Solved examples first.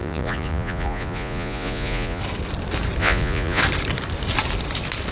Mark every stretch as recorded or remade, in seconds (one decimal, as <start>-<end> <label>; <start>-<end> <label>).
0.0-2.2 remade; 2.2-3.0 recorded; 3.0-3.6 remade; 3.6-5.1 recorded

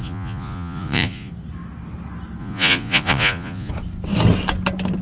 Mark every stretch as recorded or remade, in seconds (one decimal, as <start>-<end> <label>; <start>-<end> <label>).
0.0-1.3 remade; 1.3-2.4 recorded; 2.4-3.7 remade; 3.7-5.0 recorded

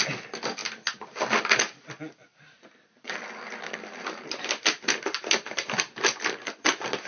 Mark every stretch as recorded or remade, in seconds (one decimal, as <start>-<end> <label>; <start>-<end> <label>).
0.0-7.1 recorded